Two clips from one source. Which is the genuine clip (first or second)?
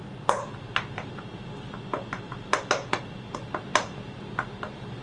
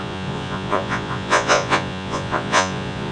first